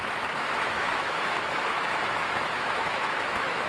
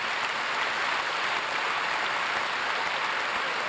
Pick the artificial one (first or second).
first